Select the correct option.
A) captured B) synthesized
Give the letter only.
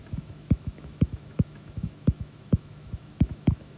B